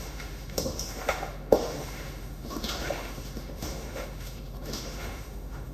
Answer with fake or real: fake